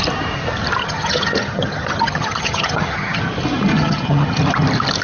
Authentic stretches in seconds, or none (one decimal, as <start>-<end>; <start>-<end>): 0.0-0.8; 3.2-3.7; 4.4-5.0